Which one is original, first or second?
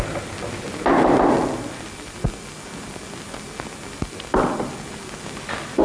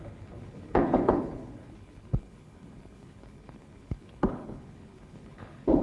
first